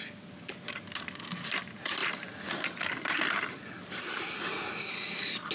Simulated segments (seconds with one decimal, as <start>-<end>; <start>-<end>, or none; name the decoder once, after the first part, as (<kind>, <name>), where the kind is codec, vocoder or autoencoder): none